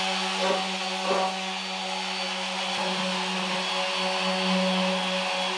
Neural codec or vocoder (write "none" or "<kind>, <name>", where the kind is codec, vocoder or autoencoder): none